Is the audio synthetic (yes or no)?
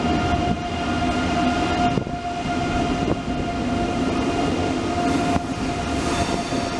no